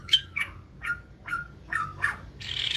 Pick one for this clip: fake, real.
fake